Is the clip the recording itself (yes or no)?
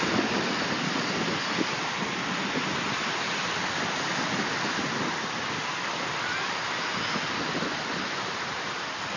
yes